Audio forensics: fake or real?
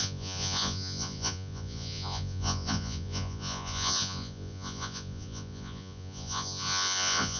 fake